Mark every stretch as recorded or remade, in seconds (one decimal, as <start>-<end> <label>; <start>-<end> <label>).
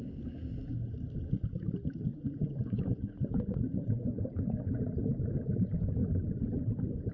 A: 0.0-2.1 recorded; 2.1-4.8 remade; 4.8-7.1 recorded